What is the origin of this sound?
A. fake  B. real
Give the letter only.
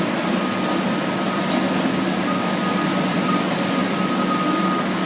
B